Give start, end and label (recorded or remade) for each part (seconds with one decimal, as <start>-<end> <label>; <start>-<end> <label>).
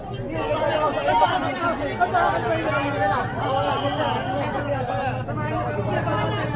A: 0.0-6.6 recorded